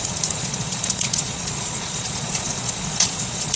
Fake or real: fake